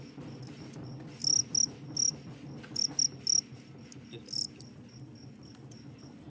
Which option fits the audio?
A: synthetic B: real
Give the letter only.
B